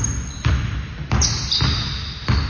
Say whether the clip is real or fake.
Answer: real